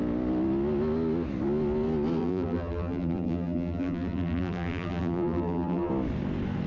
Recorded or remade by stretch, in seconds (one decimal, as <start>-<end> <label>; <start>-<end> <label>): 0.0-2.2 recorded; 2.2-5.9 remade; 5.9-6.7 recorded